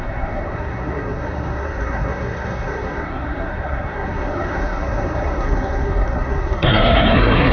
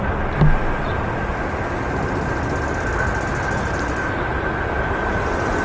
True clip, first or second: second